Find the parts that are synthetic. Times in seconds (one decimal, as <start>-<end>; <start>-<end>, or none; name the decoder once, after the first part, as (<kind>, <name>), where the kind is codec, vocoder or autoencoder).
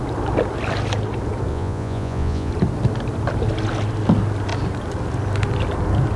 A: 1.5-2.5 (vocoder, Vocos)